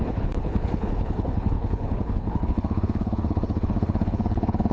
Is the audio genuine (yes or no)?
no